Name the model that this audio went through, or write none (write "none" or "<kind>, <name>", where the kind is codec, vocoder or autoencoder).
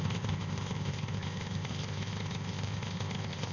codec, ZipCodec